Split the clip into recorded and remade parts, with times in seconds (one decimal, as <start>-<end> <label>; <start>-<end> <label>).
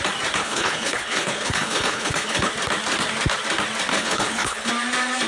0.0-0.4 recorded; 0.4-2.5 remade; 2.5-3.9 recorded; 3.9-4.7 remade; 4.7-5.3 recorded